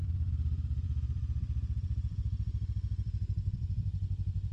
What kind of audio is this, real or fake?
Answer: fake